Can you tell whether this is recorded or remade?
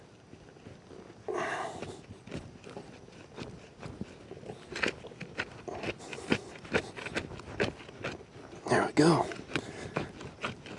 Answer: recorded